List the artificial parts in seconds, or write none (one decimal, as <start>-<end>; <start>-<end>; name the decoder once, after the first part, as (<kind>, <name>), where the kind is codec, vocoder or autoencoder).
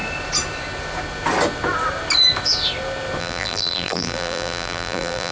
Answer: 3.2-5.3 (vocoder, BigVGAN v2)